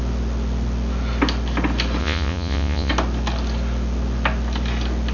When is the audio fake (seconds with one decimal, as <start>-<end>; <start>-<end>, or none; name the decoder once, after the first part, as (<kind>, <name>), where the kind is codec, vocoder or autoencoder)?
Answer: 2.0-2.9 (vocoder, Vocos)